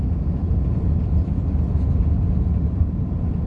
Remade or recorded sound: recorded